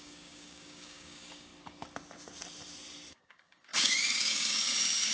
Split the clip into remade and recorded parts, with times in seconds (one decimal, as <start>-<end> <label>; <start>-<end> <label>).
0.0-1.5 remade; 1.5-3.1 recorded; 3.1-5.1 remade